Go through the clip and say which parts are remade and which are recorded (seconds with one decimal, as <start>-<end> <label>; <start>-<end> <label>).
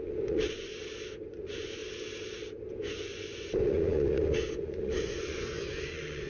0.0-0.7 remade; 0.7-1.3 recorded; 1.3-1.8 remade; 1.8-2.7 recorded; 2.7-6.3 remade